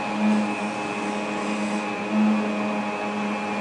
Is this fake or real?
real